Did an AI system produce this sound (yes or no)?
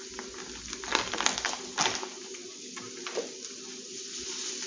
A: no